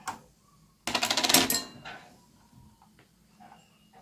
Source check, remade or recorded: recorded